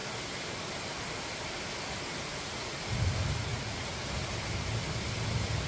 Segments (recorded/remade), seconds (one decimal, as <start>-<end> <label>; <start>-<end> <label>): 0.0-2.3 recorded; 2.3-2.8 remade; 2.8-3.4 recorded; 3.4-4.0 remade; 4.0-5.7 recorded